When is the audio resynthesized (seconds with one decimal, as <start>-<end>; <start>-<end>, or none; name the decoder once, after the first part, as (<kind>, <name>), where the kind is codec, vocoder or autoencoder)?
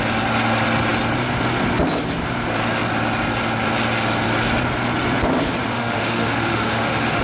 5.7-7.2 (autoencoder, DAC-VAE)